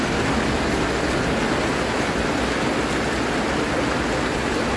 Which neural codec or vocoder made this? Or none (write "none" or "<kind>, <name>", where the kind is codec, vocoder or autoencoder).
none